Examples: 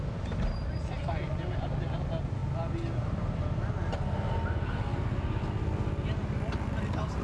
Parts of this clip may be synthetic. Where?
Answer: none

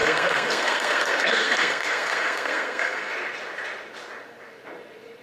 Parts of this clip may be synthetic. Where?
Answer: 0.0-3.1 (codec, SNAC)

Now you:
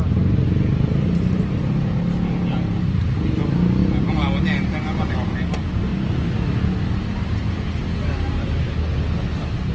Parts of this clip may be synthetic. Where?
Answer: none